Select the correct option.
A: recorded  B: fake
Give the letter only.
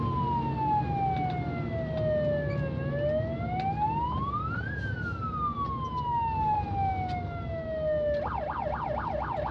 A